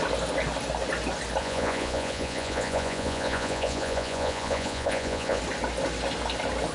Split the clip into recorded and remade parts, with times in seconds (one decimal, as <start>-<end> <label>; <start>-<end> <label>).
0.0-1.4 recorded; 1.4-5.4 remade; 5.4-6.7 recorded